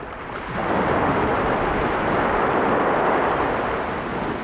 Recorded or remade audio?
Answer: recorded